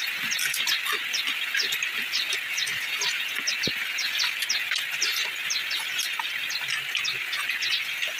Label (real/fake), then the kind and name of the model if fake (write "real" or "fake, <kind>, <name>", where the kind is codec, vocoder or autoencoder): real